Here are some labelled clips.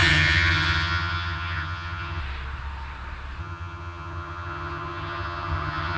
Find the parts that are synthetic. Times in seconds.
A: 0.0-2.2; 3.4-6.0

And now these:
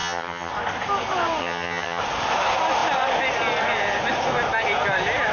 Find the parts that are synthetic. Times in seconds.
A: 0.0-0.5; 1.4-2.0

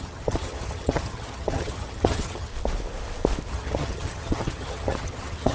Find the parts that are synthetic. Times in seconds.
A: 0.0-2.5; 3.5-5.5

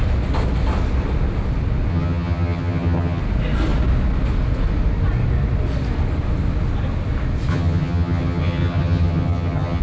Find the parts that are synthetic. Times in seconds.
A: 1.9-3.2; 7.5-9.8

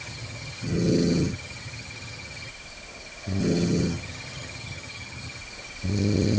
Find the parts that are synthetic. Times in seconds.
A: 0.0-2.5; 3.4-5.4